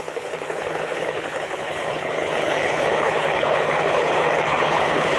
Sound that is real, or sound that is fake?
fake